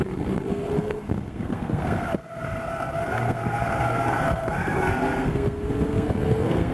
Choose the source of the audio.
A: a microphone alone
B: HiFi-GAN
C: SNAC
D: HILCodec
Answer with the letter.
C